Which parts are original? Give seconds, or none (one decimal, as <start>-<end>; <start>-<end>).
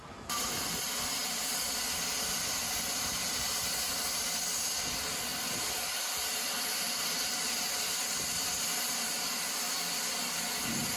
0.0-11.0